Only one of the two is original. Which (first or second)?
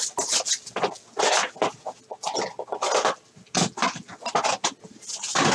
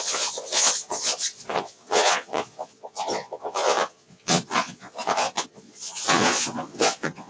first